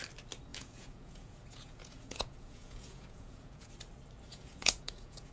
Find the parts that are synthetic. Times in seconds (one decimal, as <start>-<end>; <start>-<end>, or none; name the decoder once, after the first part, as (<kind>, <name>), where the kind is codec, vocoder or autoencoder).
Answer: 0.5-3.7 (vocoder, Vocos); 4.3-5.3